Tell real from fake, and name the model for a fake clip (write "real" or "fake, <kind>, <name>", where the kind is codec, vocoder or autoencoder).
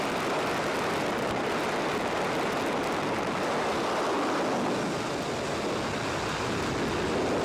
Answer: real